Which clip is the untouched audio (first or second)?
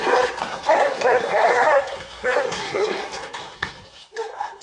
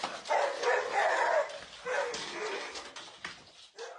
second